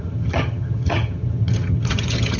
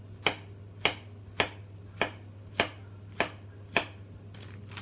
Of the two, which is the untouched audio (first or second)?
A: second